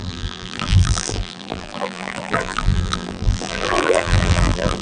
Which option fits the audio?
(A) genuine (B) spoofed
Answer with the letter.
B